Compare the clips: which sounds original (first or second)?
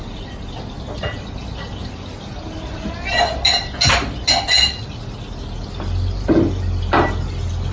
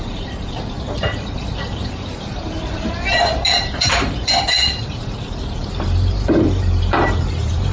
first